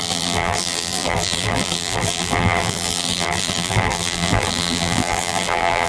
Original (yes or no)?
no